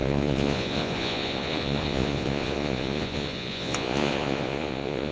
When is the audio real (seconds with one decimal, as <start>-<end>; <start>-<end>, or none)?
none